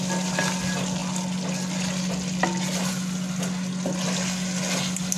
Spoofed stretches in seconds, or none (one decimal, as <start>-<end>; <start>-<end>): none